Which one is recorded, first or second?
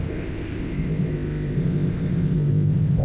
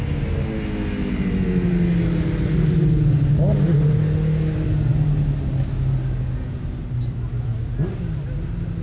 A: second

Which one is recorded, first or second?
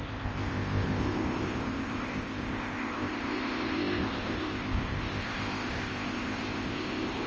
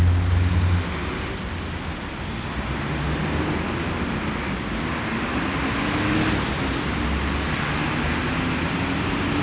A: second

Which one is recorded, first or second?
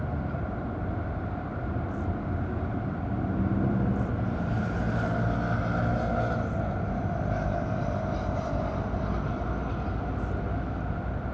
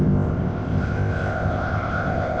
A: first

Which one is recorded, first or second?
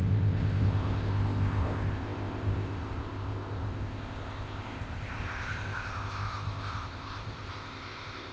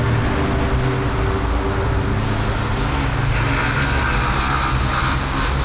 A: second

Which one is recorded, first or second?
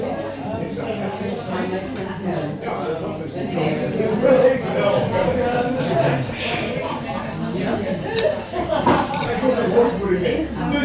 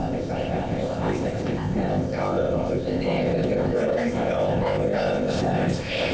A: first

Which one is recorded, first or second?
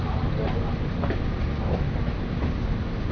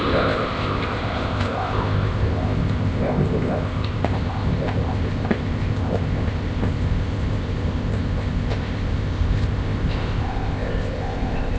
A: first